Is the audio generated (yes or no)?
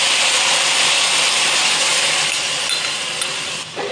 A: no